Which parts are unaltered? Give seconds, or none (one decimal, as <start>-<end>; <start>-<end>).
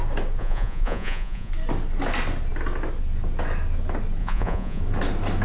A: 0.0-0.4; 1.5-4.2; 4.8-5.4